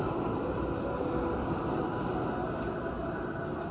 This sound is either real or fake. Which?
real